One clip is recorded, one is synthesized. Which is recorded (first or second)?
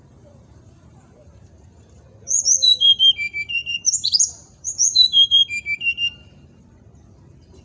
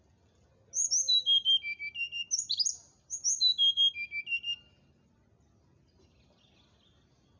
second